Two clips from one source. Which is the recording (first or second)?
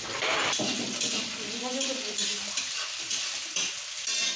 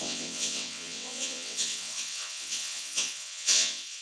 first